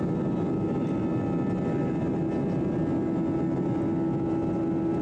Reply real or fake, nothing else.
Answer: real